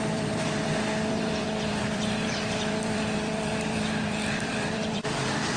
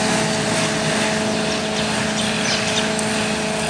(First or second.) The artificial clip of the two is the first